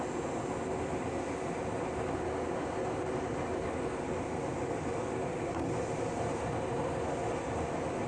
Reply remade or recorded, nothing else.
recorded